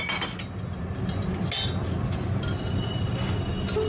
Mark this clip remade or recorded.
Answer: recorded